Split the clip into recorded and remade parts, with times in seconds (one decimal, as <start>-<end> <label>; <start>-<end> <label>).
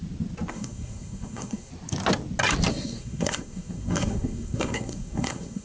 0.0-0.5 recorded; 0.5-1.7 remade; 1.7-2.7 recorded; 2.7-5.6 remade